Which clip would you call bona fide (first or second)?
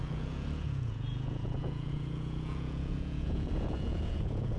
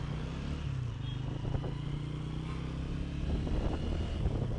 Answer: second